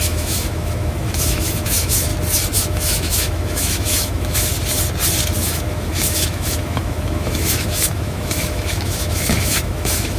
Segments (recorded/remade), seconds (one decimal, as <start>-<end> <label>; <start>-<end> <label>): 0.0-2.1 remade; 2.1-2.6 recorded; 2.6-4.5 remade; 4.5-5.4 recorded; 5.4-10.2 remade